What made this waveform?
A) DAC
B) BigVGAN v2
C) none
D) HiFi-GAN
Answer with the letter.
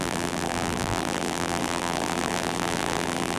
B